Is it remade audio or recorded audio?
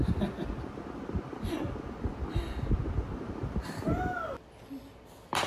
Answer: recorded